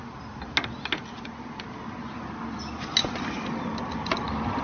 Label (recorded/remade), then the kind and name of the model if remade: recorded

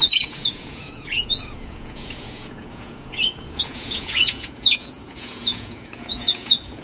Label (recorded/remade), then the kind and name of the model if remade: remade, vocoder, Vocos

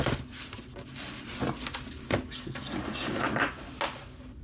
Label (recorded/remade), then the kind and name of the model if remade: recorded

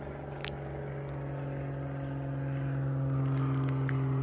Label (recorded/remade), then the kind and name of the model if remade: recorded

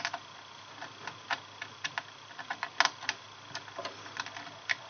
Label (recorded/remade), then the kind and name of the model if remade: recorded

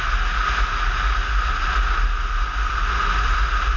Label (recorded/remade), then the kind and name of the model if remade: recorded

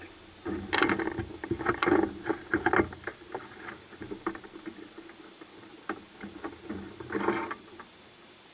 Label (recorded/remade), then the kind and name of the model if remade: recorded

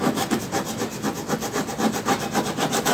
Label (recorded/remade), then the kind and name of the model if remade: recorded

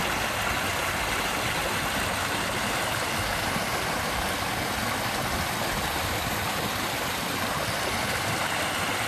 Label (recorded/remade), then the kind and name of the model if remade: recorded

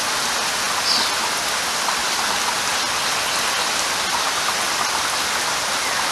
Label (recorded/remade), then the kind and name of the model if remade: recorded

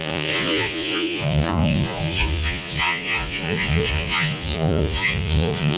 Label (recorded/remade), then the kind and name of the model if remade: remade, vocoder, Vocos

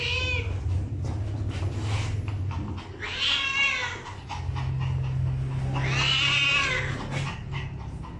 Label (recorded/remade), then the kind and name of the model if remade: recorded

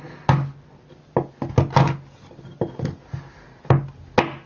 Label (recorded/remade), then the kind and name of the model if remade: recorded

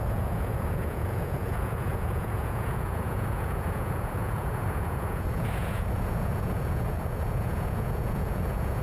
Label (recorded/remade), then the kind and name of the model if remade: remade, vocoder, Vocos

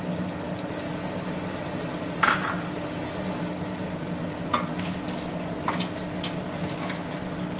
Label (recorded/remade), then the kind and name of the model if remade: recorded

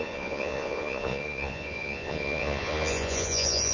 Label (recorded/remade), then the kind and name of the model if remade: remade, vocoder, Vocos